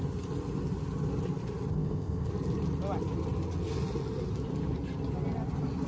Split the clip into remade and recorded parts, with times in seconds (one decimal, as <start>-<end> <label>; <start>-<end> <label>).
0.0-1.7 recorded; 1.7-2.3 remade; 2.3-5.9 recorded